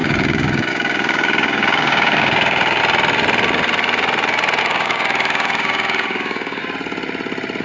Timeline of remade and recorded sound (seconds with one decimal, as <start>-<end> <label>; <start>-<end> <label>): 0.0-2.8 remade; 2.8-4.6 recorded; 4.6-6.6 remade; 6.6-7.6 recorded